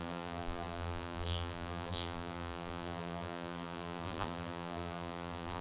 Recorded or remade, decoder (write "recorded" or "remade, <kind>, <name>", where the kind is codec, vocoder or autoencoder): remade, vocoder, BigVGAN v2